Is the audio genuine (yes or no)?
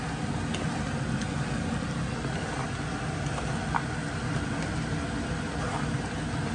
yes